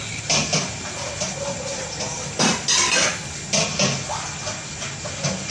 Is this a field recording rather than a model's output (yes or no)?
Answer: yes